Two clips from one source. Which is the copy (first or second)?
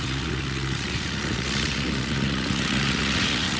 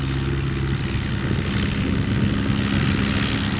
first